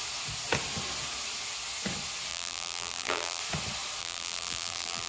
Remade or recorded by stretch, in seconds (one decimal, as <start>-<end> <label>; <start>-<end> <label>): 0.0-2.3 recorded; 2.3-3.4 remade; 3.4-4.0 recorded; 4.0-5.1 remade